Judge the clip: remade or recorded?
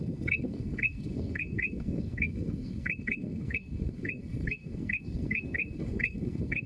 remade